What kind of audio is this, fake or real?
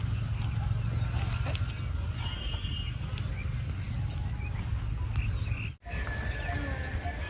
real